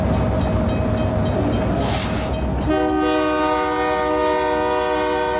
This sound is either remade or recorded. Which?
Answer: recorded